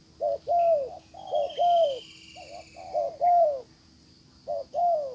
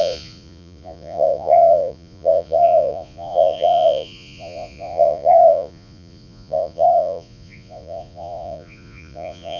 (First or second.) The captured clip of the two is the first